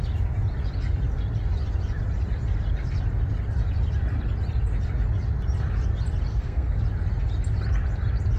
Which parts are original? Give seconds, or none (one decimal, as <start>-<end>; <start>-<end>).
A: 0.0-6.3; 6.8-8.4

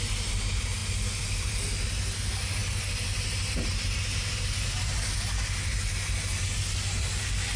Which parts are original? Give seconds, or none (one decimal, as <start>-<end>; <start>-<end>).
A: 0.0-7.6

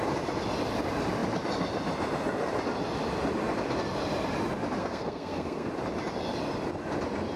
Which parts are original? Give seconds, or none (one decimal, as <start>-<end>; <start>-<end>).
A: 0.0-4.8; 5.7-7.4